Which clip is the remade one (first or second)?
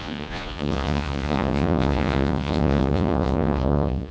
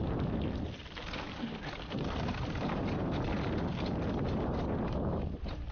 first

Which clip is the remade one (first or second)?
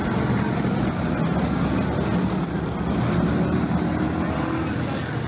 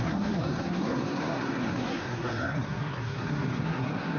second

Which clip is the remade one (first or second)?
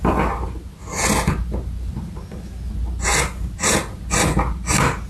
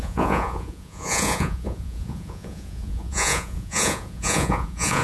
second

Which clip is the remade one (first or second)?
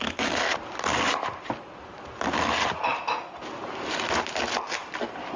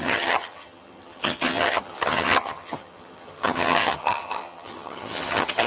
second